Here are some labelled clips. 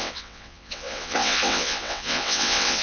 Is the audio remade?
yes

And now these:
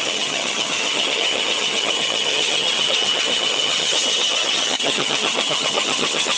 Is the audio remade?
yes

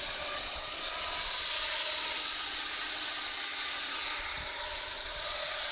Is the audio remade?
yes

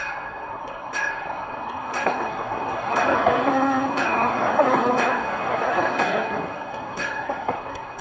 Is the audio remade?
yes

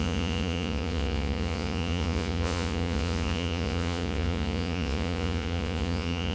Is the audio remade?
yes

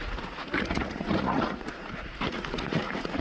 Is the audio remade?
yes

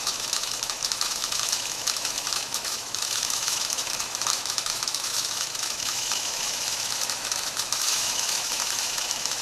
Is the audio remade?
yes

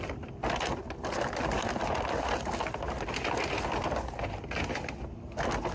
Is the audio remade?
no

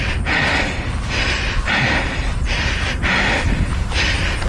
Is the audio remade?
no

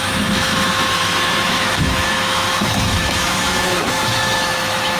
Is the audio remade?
yes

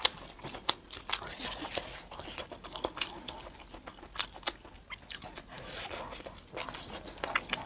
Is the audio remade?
no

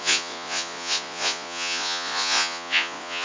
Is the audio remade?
yes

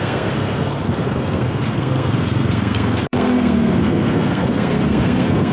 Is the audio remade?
yes